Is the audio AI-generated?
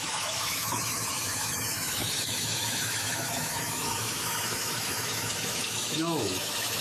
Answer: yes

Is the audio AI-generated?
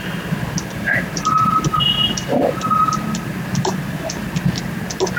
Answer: yes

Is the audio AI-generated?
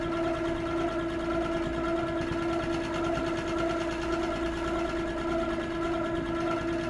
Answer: no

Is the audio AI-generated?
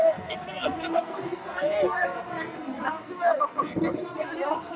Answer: yes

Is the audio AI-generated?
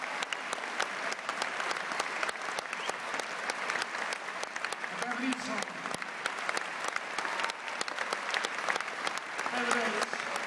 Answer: no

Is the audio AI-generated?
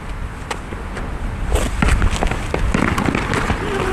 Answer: no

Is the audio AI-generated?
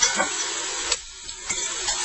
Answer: yes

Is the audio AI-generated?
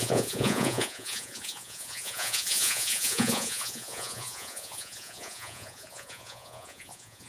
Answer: yes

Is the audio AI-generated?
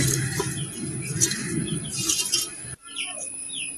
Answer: no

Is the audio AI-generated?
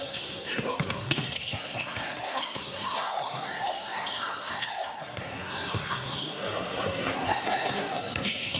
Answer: yes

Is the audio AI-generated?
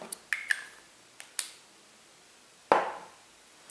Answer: no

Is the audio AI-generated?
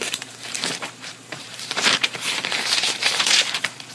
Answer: yes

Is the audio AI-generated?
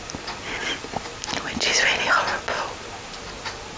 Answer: no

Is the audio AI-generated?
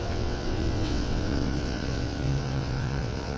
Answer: yes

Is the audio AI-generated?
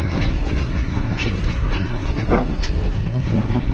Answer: yes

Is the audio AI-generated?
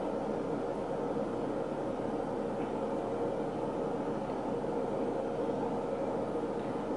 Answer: no